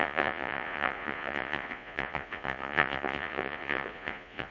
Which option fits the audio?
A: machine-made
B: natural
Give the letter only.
A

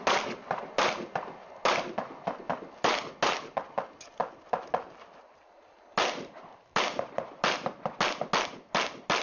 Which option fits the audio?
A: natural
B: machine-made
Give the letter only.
A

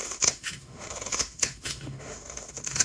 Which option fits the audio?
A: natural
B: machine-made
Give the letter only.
B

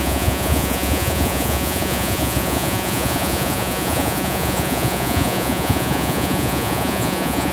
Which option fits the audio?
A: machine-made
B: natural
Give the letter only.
A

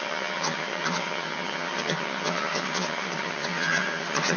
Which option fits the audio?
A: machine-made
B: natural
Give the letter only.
A